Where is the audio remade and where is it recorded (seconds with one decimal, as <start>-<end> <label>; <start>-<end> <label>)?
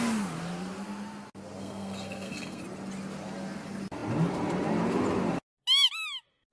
0.0-1.6 recorded; 1.6-2.6 remade; 2.6-6.5 recorded